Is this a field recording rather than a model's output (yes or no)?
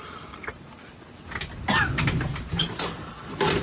yes